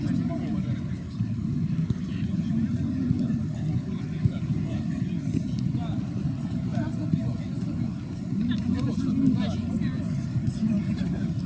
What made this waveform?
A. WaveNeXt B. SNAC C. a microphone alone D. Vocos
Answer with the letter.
C